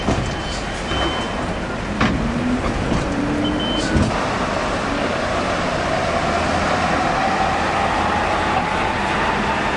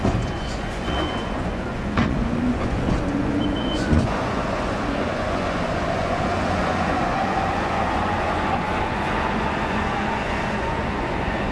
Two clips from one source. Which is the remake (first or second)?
second